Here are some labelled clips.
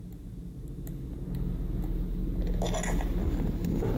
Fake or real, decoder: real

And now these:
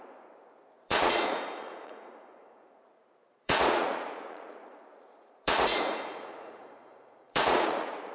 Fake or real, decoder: fake, vocoder, Vocos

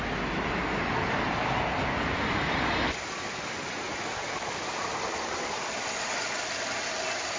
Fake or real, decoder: real